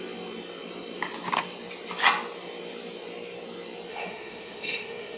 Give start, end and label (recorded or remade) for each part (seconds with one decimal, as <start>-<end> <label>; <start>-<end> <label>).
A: 0.0-3.9 recorded; 3.9-5.2 remade